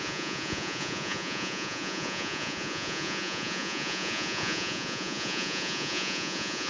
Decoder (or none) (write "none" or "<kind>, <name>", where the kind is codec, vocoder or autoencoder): vocoder, Vocos